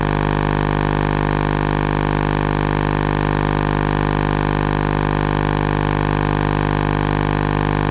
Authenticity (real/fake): real